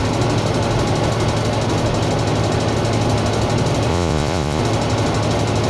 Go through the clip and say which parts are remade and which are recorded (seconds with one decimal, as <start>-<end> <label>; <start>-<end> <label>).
0.0-3.9 recorded; 3.9-4.6 remade; 4.6-5.7 recorded